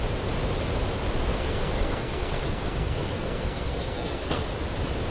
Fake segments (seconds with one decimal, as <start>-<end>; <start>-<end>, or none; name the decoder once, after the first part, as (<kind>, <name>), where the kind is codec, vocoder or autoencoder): 1.3-4.4 (codec, SNAC)